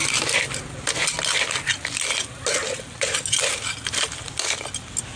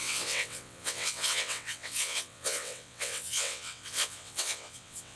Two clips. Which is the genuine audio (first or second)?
first